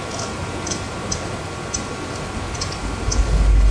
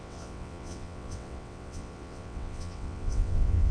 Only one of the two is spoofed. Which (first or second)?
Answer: second